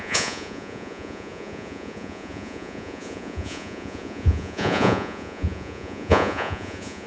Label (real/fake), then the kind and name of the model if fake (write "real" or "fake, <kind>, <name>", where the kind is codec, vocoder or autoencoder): fake, vocoder, Vocos